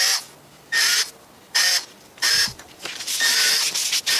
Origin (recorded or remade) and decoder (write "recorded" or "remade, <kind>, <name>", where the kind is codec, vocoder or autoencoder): recorded